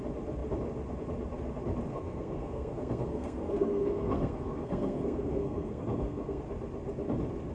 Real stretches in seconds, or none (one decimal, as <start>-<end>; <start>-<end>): 0.0-1.9; 6.4-7.5